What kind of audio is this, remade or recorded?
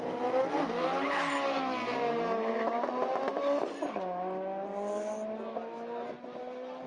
recorded